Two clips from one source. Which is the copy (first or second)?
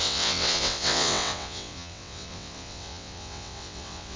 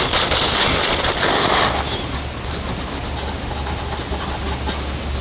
first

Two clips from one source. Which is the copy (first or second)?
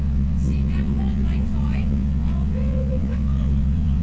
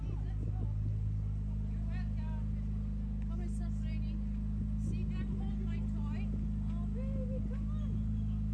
first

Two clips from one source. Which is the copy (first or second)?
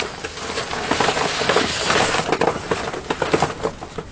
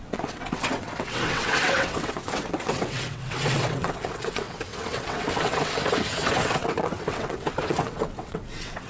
second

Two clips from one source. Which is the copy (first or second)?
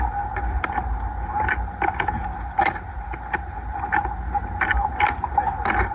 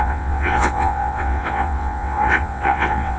second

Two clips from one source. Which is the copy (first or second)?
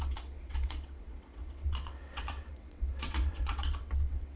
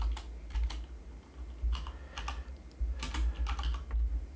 first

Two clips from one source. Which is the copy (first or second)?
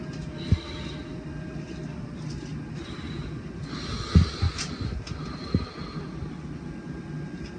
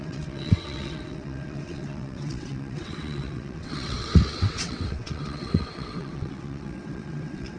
second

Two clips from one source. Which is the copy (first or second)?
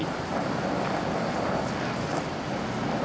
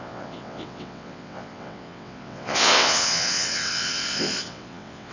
second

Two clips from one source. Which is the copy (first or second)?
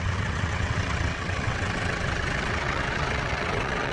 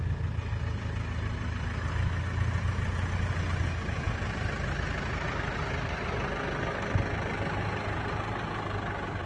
first